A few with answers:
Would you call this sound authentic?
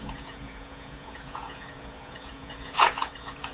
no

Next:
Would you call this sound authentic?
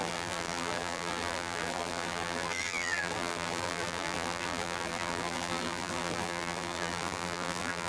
no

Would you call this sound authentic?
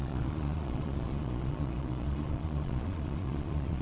no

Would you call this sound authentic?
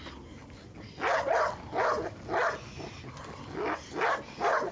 yes